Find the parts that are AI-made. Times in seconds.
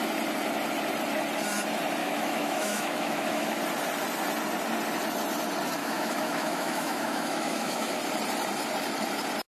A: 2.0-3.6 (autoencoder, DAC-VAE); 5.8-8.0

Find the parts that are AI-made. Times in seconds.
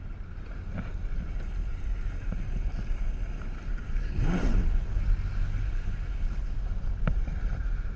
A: none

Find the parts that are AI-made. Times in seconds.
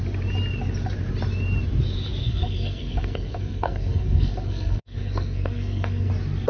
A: 2.2-6.1 (codec, SNAC)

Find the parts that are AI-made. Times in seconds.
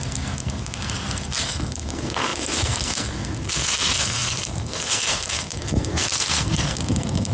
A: 0.0-7.3 (codec, SNAC)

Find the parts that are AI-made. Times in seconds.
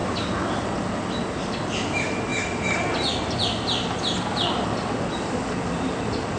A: none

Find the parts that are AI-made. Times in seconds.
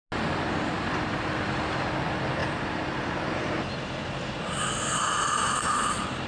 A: none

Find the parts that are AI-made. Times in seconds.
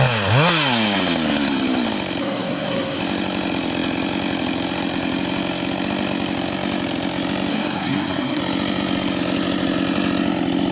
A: 2.2-3.0 (codec, SNAC); 7.5-8.4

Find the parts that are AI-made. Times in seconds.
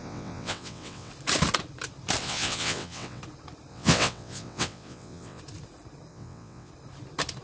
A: 0.0-1.1 (vocoder, WaveNeXt); 2.2-3.2; 3.7-5.4; 6.1-6.7